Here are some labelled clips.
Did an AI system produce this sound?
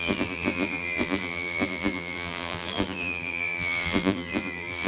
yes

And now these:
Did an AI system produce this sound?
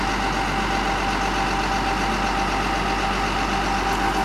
no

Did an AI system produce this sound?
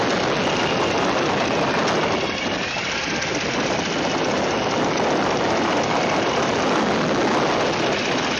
no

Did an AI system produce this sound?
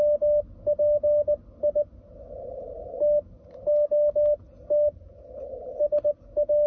no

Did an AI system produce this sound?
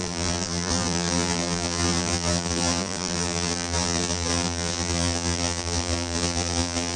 yes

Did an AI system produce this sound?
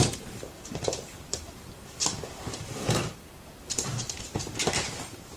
yes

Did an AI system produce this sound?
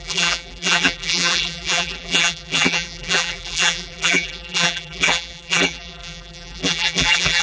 yes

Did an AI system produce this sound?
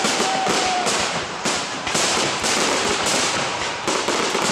yes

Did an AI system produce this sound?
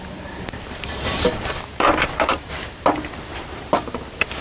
yes